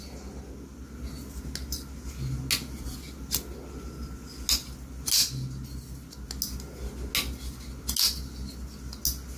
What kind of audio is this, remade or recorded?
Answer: recorded